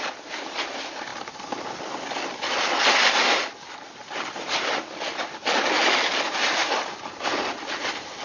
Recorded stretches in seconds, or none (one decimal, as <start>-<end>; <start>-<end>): 0.0-8.2